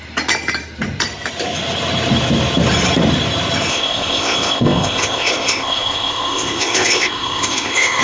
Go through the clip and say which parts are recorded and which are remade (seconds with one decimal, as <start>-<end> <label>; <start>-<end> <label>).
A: 0.0-3.7 recorded; 3.7-8.0 remade